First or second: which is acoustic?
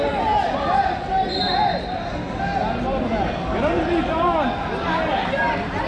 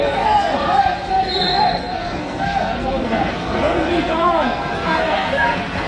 first